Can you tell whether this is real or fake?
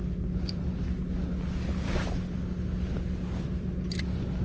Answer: real